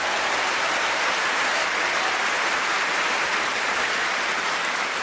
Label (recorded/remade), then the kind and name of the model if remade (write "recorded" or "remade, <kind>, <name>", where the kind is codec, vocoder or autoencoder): remade, vocoder, BigVGAN v2